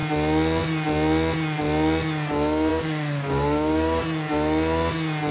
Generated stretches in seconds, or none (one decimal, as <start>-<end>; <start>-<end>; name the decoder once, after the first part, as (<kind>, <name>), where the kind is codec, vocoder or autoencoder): 2.7-4.0 (codec, DAC)